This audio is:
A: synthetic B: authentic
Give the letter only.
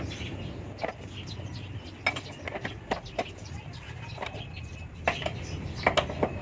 B